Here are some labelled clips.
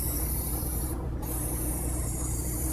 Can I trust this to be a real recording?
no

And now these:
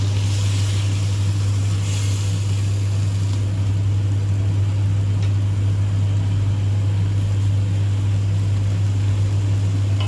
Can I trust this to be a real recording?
yes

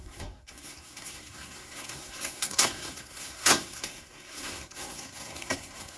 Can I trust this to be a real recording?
no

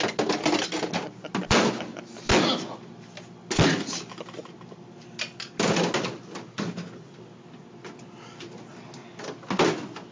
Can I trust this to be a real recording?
yes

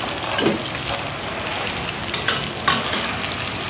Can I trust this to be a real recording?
yes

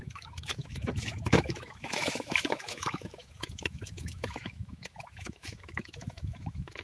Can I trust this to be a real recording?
no